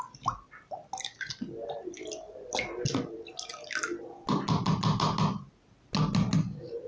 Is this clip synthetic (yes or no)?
no